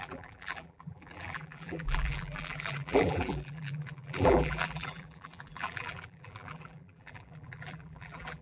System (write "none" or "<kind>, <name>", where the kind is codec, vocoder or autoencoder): vocoder, BigVGAN v2